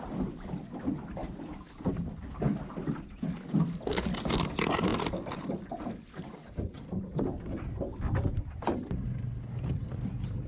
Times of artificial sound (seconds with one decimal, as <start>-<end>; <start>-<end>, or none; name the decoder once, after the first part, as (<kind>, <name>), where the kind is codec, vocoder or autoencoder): 1.2-1.9 (vocoder, BigVGAN v2)